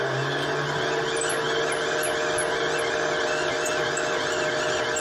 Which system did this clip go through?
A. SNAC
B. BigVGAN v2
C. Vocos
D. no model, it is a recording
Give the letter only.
D